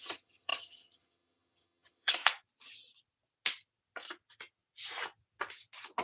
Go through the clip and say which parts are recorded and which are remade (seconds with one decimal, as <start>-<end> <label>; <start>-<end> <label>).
0.0-2.2 remade; 2.2-6.0 recorded